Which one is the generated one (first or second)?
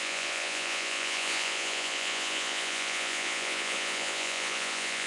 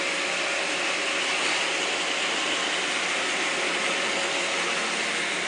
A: first